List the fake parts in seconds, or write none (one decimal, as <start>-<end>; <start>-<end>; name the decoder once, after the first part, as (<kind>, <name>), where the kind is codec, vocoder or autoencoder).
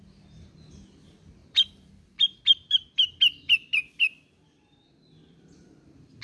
1.4-1.9 (vocoder, BigVGAN v2); 2.5-3.1